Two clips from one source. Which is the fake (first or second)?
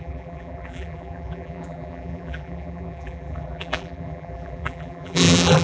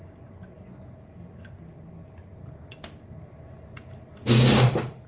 first